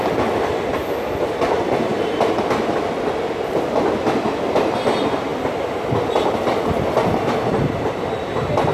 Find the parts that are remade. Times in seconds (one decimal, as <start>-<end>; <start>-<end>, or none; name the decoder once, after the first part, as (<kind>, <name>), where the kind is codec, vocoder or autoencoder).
none